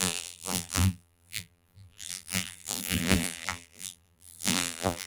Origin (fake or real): fake